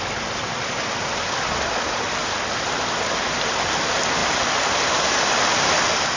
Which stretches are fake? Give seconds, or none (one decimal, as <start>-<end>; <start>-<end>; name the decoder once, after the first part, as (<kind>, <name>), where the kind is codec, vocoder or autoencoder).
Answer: none

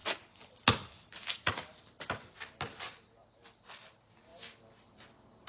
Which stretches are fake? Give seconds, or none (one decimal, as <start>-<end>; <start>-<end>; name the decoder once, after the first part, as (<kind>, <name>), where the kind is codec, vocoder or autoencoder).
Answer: none